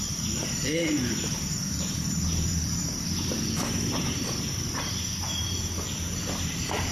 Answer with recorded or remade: remade